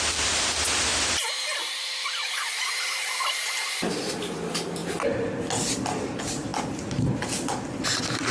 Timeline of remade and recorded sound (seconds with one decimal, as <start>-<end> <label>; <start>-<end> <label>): 0.0-1.6 recorded; 1.6-4.1 remade; 4.1-8.3 recorded